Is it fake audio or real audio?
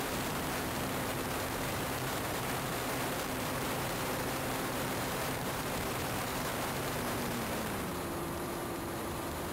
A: fake